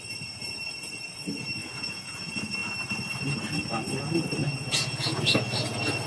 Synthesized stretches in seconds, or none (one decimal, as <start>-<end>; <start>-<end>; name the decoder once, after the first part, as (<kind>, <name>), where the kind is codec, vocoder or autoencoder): 1.6-2.2 (vocoder, Vocos); 4.4-5.2